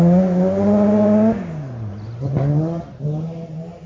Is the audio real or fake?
real